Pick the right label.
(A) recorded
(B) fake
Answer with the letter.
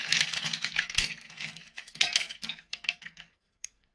B